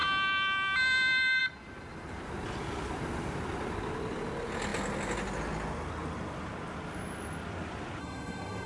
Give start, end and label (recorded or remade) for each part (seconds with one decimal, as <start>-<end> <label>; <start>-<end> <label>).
0.0-8.0 recorded; 8.0-8.7 remade